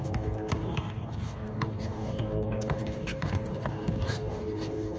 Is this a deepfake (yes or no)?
yes